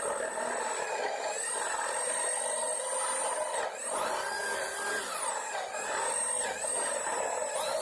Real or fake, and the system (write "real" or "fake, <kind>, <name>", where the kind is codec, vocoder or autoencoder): real